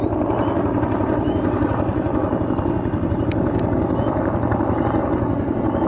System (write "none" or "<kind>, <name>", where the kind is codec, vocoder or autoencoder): vocoder, BigVGAN v2